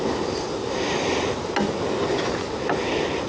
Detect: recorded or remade recorded